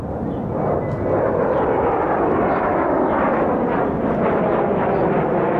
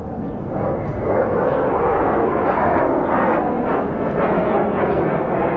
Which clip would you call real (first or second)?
first